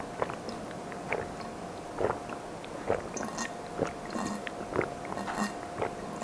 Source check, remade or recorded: recorded